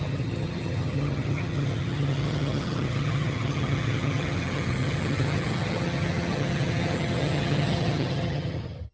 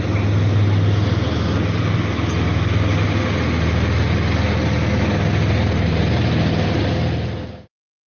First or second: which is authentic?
second